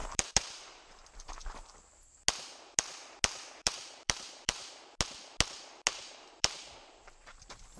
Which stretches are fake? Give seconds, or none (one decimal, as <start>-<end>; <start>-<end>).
0.0-1.1; 3.6-4.8; 5.9-6.5